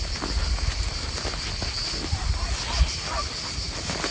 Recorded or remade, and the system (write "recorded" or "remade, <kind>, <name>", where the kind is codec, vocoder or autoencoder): recorded